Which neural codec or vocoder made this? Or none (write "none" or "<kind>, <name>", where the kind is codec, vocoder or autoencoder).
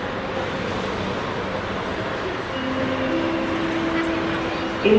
none